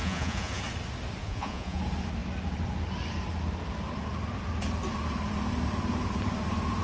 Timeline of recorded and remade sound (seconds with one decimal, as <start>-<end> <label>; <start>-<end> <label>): 0.0-0.6 remade; 0.6-1.2 recorded; 1.2-1.8 remade; 1.8-6.8 recorded